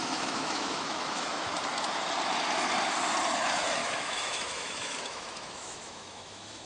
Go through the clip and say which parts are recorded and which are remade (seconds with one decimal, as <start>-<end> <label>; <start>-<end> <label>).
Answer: 0.0-1.5 remade; 1.5-3.8 recorded; 3.8-6.7 remade